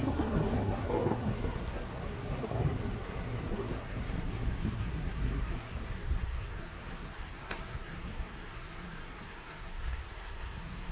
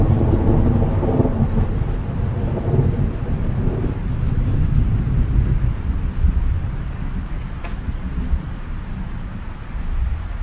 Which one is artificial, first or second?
first